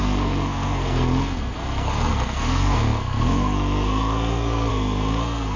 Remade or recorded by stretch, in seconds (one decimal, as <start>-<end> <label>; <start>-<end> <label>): 0.0-5.6 remade